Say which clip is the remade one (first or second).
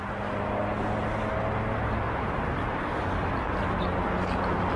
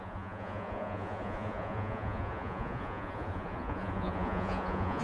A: second